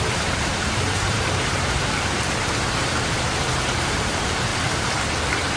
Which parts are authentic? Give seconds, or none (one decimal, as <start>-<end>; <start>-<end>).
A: 4.5-5.1